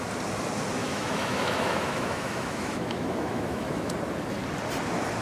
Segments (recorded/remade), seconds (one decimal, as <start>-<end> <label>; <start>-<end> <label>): 0.0-0.8 recorded; 0.8-3.9 remade; 3.9-5.2 recorded